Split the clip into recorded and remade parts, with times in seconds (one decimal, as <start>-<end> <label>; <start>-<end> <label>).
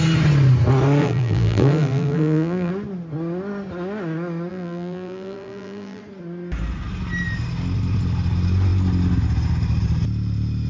0.0-1.0 recorded; 1.0-2.7 remade; 2.7-4.5 recorded; 4.5-6.0 remade; 6.0-10.7 recorded